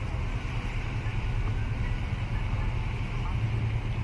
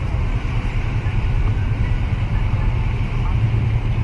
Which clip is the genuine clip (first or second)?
first